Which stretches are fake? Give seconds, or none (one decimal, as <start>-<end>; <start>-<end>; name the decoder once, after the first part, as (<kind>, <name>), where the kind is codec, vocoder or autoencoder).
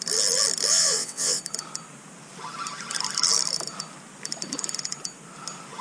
0.7-1.4 (vocoder, WaveNeXt)